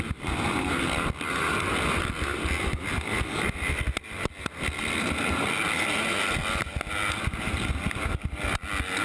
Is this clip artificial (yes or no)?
no